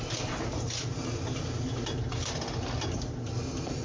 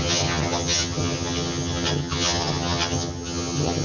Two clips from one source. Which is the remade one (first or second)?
second